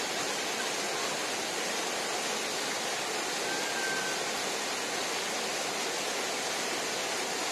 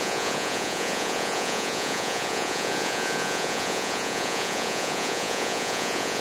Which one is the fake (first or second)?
second